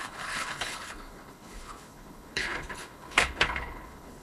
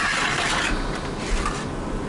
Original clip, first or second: second